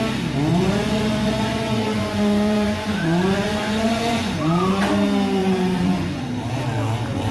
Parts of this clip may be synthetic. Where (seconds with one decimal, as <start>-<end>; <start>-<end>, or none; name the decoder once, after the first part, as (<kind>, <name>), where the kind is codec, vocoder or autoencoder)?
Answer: 0.5-4.9 (vocoder, Vocos); 5.4-6.2